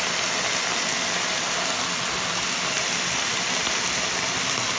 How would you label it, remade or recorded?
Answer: recorded